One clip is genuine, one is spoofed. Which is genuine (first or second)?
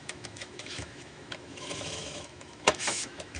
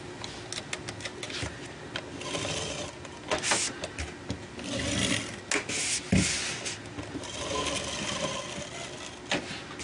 second